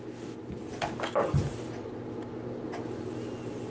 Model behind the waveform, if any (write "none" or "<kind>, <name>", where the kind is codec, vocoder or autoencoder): none